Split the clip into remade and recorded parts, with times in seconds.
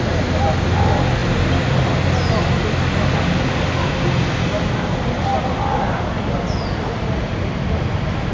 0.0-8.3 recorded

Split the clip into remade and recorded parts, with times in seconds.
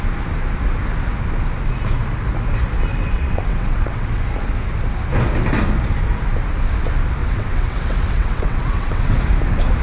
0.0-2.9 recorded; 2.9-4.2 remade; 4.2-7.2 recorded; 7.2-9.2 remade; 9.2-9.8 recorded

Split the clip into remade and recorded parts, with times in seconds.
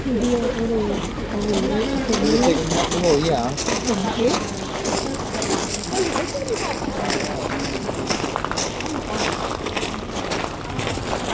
0.0-4.0 recorded; 4.0-4.5 remade; 4.5-11.3 recorded